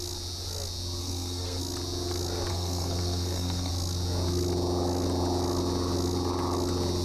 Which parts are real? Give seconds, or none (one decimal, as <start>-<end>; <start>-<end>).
0.0-1.0; 1.6-2.5; 3.7-7.0